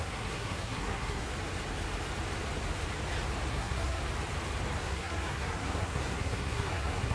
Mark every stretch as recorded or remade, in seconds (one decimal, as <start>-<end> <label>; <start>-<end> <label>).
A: 0.0-1.3 remade; 1.3-3.5 recorded; 3.5-4.0 remade; 4.0-4.8 recorded; 4.8-7.1 remade